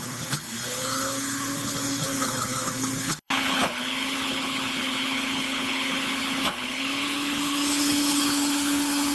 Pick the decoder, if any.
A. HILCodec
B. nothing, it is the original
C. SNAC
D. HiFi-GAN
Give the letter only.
A